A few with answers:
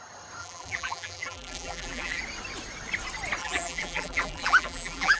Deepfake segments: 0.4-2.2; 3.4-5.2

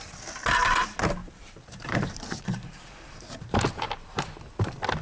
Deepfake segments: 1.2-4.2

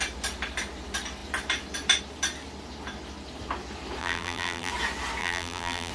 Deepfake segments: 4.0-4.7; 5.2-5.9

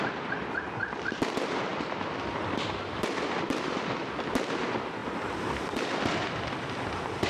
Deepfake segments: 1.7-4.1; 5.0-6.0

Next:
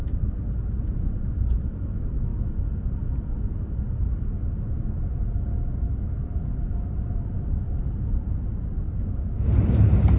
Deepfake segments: 0.0-2.3; 4.4-10.2

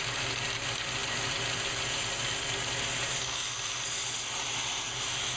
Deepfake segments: none

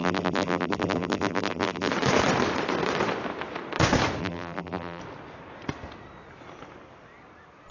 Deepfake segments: 0.0-1.9; 4.2-5.0